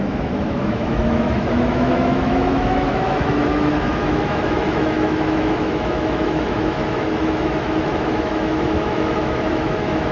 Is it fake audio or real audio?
fake